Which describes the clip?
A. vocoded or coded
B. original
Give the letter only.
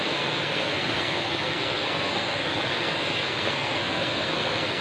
A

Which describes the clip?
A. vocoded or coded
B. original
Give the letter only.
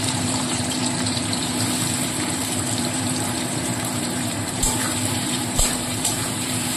A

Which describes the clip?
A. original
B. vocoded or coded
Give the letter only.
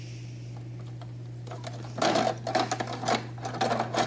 A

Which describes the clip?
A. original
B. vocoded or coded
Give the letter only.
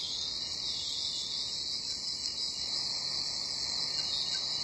A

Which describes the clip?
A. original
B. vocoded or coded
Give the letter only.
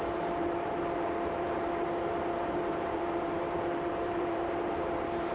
B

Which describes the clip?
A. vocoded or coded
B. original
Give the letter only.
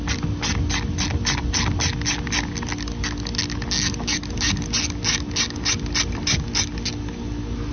B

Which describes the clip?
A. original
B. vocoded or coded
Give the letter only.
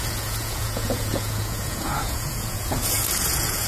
B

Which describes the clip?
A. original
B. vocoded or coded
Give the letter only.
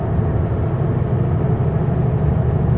A